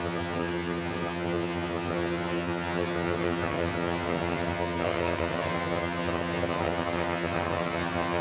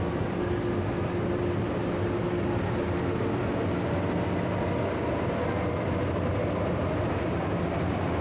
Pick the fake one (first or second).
first